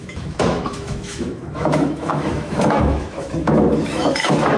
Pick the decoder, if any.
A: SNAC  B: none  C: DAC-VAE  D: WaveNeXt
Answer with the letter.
C